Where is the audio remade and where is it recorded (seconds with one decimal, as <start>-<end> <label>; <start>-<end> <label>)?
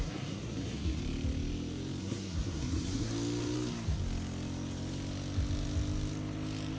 0.0-1.0 remade; 1.0-2.0 recorded; 2.0-3.1 remade; 3.1-6.8 recorded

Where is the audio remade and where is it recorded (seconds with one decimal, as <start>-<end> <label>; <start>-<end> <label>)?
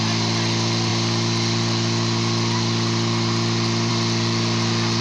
0.0-5.0 recorded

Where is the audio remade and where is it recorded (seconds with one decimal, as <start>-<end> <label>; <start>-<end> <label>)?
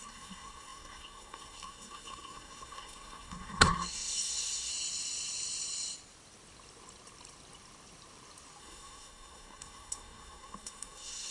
0.0-4.7 remade; 4.7-8.6 recorded; 8.6-11.3 remade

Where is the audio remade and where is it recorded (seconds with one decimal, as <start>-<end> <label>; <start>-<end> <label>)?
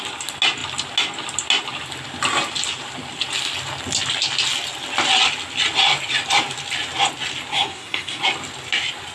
0.0-7.5 recorded; 7.5-8.2 remade; 8.2-9.1 recorded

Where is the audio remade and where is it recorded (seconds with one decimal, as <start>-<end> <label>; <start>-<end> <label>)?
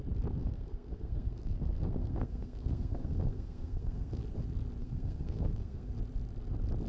0.0-0.4 recorded; 0.4-4.2 remade; 4.2-4.8 recorded; 4.8-5.9 remade; 5.9-6.9 recorded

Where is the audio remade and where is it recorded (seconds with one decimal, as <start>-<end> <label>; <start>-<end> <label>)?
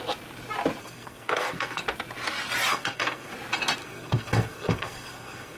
0.0-0.8 recorded; 0.8-1.8 remade; 1.8-2.7 recorded; 2.7-3.3 remade; 3.3-3.8 recorded; 3.8-5.6 remade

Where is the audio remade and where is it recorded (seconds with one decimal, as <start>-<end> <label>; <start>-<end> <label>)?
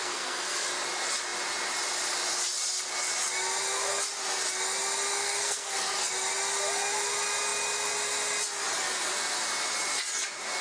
0.0-0.7 remade; 0.7-5.1 recorded; 5.1-6.1 remade; 6.1-10.6 recorded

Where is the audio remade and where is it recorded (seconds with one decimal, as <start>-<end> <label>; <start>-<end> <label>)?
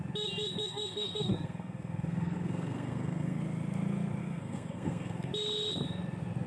0.0-0.6 recorded; 0.6-3.4 remade; 3.4-4.2 recorded; 4.2-5.3 remade; 5.3-6.5 recorded